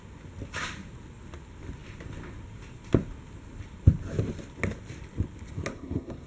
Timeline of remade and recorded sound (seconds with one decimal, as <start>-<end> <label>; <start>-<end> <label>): 0.0-5.7 recorded; 5.7-6.3 remade